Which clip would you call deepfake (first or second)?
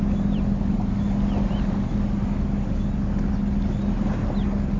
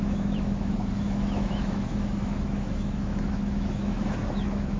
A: second